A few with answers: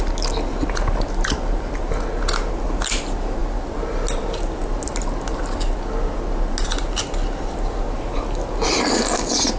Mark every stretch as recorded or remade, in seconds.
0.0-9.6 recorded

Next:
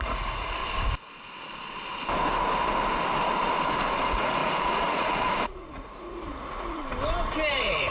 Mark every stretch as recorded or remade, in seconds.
0.0-0.6 remade; 0.6-3.8 recorded; 3.8-6.8 remade; 6.8-7.5 recorded; 7.5-7.9 remade

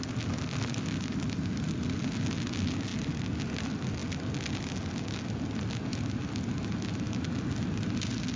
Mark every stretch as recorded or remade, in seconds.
0.0-8.4 recorded

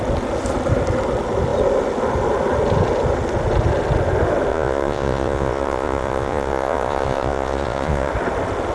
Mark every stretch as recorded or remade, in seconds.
0.0-4.5 recorded; 4.5-8.1 remade; 8.1-8.7 recorded

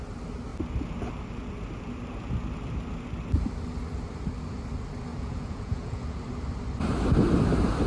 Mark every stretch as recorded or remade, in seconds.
0.0-5.1 recorded; 5.1-6.2 remade; 6.2-7.9 recorded

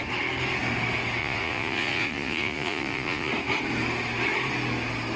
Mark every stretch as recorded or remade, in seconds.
0.0-1.2 recorded; 1.2-3.3 remade; 3.3-5.2 recorded